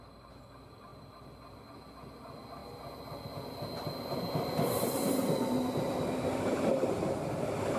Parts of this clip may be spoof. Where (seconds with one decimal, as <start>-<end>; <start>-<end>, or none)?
none